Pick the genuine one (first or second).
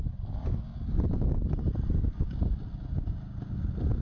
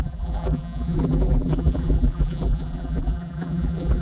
first